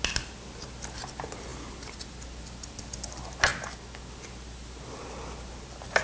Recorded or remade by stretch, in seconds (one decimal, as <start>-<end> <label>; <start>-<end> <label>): 0.0-6.0 recorded